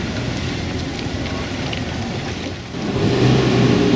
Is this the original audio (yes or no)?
yes